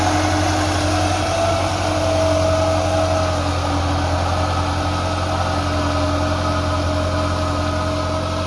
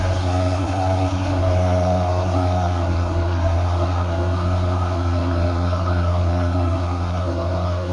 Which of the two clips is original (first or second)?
first